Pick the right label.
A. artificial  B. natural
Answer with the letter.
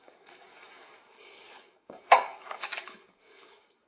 A